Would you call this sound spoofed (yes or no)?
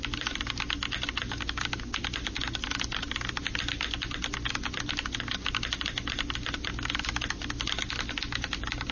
no